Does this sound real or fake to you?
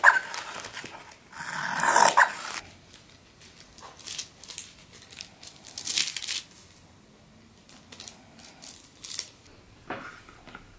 real